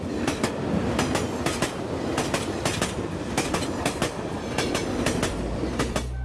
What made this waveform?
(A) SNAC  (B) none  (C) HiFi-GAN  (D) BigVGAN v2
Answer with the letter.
B